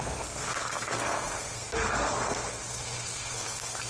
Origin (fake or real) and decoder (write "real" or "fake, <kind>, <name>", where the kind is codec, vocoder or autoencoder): fake, codec, SNAC